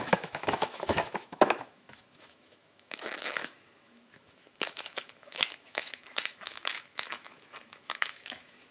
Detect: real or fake fake